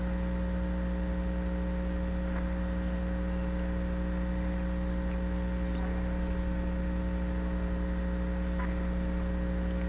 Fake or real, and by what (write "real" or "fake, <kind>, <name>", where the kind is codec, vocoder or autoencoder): real